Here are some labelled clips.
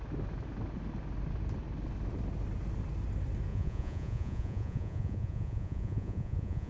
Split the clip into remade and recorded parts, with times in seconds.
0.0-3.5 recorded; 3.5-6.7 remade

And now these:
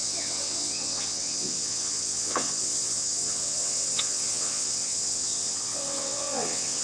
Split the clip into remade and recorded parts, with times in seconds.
0.0-6.8 remade

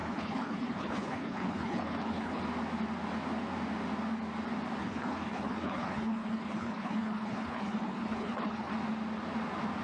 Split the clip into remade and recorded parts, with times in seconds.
0.0-2.4 remade; 2.4-4.8 recorded; 4.8-8.7 remade; 8.7-9.8 recorded

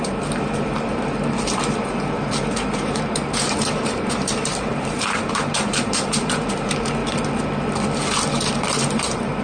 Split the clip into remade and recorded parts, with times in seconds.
0.0-7.0 remade; 7.0-8.5 recorded; 8.5-9.4 remade

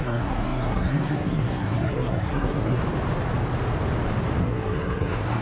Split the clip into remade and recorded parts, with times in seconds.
0.0-2.8 remade; 2.8-4.4 recorded; 4.4-5.4 remade

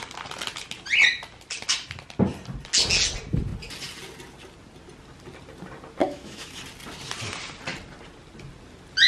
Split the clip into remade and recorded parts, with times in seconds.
0.0-6.0 recorded; 6.0-6.6 remade; 6.6-9.1 recorded